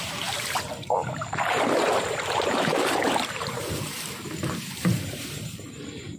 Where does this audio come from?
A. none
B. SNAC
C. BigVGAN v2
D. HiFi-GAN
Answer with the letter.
C